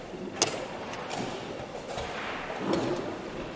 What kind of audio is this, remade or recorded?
recorded